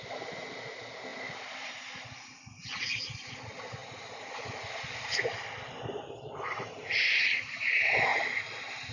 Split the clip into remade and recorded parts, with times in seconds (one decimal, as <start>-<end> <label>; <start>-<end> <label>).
0.0-1.1 recorded; 1.1-1.7 remade; 1.7-2.3 recorded; 2.3-2.8 remade; 2.8-3.8 recorded; 3.8-6.7 remade; 6.7-8.1 recorded; 8.1-8.9 remade

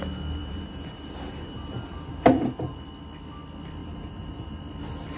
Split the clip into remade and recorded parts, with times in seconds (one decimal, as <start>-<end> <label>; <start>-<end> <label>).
0.0-0.4 recorded; 0.4-2.8 remade; 2.8-3.8 recorded; 3.8-4.6 remade; 4.6-5.2 recorded